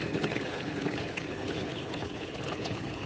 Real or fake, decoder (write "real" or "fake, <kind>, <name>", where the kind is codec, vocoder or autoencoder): fake, codec, HILCodec